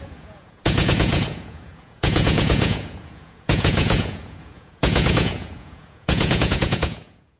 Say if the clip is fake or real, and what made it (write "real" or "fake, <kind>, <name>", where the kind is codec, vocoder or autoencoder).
fake, vocoder, Vocos